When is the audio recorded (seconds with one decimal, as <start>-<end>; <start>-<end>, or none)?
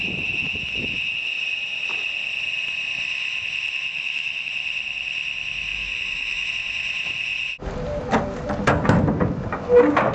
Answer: 0.0-3.9; 4.5-5.7; 6.5-10.1